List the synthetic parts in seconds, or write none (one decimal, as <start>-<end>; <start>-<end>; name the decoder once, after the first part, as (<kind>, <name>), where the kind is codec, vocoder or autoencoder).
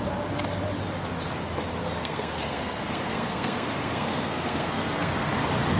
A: 1.8-5.3 (codec, SNAC)